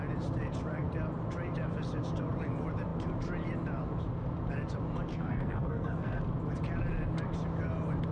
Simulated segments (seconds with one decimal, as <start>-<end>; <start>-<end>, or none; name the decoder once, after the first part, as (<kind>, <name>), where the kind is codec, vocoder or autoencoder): 5.1-6.2 (codec, SNAC)